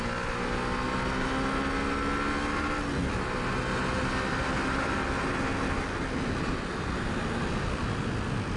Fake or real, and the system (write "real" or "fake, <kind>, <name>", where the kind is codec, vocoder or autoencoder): real